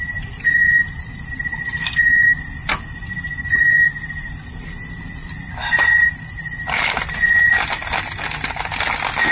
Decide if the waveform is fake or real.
real